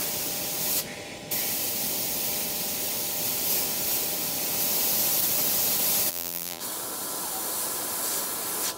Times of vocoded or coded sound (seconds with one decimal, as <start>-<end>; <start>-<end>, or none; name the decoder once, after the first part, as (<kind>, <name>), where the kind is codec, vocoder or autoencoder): 6.1-6.6 (vocoder, BigVGAN v2)